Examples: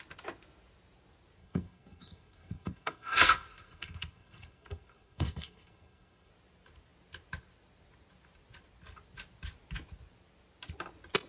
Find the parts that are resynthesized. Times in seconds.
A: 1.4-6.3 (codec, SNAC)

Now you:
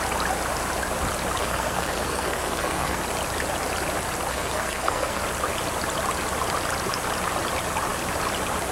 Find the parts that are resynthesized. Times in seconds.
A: 1.4-3.0 (codec, SNAC); 4.3-5.2

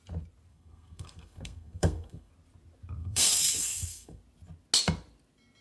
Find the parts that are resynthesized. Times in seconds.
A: 0.5-2.3 (codec, SNAC); 3.0-4.2

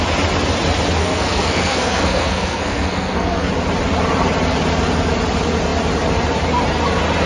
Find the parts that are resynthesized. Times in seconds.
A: 1.0-3.5 (codec, SNAC)